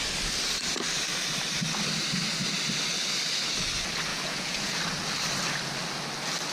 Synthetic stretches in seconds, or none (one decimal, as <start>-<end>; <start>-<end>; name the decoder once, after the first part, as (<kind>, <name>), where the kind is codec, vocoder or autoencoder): 4.1-4.8 (vocoder, Vocos)